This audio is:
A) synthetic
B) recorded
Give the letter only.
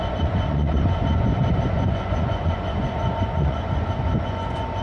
A